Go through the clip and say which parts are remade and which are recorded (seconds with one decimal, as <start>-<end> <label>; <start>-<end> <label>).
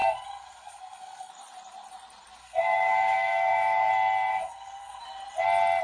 0.0-1.3 remade; 1.3-2.4 recorded; 2.4-3.9 remade; 3.9-4.3 recorded; 4.3-5.0 remade; 5.0-5.8 recorded